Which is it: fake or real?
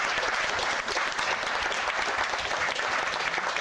real